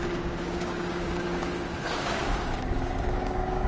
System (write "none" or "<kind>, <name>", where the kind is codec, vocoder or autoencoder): codec, DAC